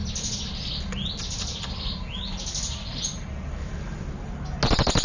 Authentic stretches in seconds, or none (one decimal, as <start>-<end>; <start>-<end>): 0.0-5.0